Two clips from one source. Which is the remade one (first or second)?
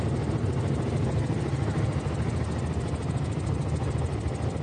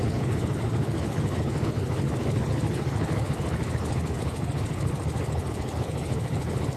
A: second